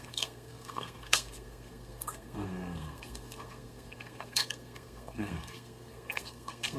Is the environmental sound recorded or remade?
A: remade